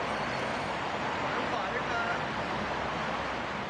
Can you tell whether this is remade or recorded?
recorded